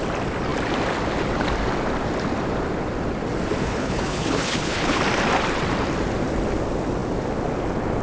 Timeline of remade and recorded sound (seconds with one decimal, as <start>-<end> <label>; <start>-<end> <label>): 0.0-3.6 recorded; 3.6-5.0 remade; 5.0-8.0 recorded